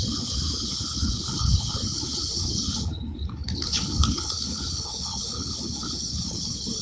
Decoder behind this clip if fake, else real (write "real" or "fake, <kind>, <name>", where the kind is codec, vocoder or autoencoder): fake, codec, HILCodec